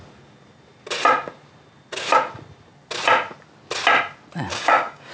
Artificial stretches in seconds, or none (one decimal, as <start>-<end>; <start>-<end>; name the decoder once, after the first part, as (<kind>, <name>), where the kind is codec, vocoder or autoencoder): 4.5-5.1 (codec, DAC)